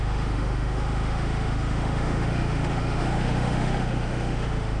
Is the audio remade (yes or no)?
yes